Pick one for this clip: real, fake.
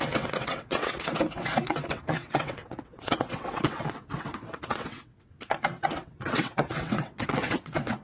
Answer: fake